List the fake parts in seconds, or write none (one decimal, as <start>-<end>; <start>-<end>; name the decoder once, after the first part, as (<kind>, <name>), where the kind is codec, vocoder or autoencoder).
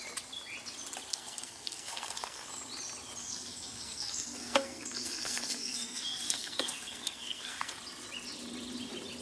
1.1-2.5 (codec, SNAC); 3.2-7.8